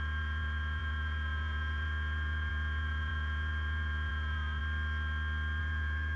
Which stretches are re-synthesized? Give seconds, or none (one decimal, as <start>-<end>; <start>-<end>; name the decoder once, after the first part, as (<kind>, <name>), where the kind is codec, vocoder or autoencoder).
0.0-4.6 (vocoder, Vocos); 5.6-6.2